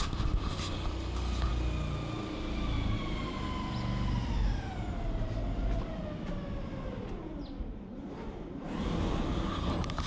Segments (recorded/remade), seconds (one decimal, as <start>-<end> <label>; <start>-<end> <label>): 0.0-10.1 recorded